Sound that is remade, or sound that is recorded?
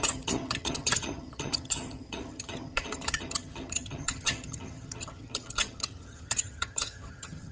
remade